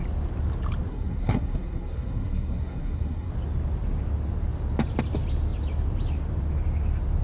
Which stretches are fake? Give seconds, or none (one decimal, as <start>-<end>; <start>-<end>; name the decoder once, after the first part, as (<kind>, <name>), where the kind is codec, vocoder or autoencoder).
0.9-3.3 (codec, SNAC)